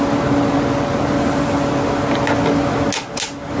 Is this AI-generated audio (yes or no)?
no